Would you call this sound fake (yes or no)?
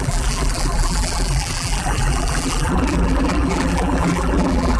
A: yes